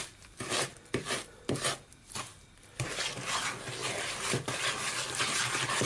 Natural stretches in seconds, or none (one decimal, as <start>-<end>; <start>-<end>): 0.0-5.9